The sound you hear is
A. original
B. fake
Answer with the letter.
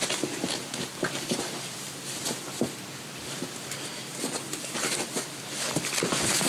B